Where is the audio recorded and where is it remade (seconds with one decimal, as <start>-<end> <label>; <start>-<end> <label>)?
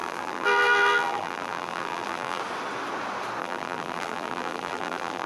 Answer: 0.0-2.4 remade; 2.4-3.4 recorded; 3.4-5.3 remade